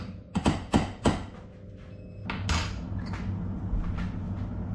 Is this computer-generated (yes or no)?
no